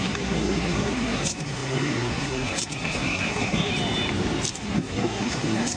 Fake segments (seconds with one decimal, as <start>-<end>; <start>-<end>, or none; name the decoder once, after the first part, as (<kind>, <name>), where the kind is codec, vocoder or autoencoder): 0.0-3.7 (codec, SNAC); 4.5-5.8